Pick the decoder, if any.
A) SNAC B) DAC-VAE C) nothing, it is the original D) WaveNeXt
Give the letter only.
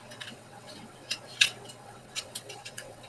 D